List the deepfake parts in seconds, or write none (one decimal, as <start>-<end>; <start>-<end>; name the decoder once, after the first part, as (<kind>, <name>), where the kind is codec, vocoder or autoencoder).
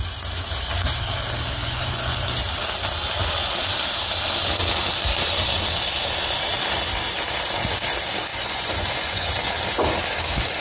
1.6-2.2 (vocoder, Vocos); 8.3-9.3